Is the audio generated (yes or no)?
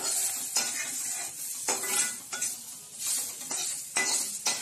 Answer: no